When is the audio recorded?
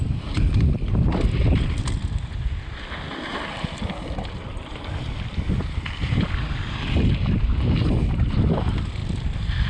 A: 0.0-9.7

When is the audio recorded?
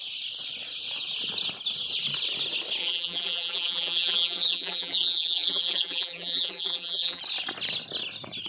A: 0.0-2.8; 7.2-8.5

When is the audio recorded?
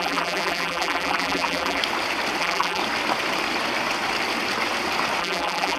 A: 1.8-2.4; 2.8-5.2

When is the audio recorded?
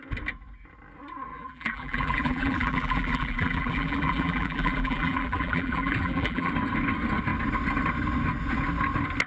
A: 0.0-1.3; 6.5-9.3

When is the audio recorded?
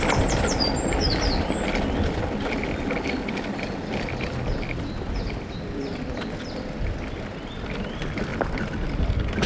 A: 0.0-8.3; 9.1-9.5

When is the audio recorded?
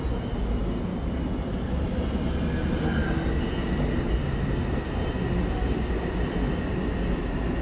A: 0.0-7.6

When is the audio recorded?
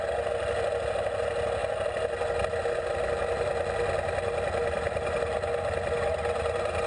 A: 0.0-6.9